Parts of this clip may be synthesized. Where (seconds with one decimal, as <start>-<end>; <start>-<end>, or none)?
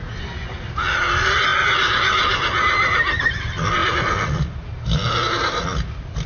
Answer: none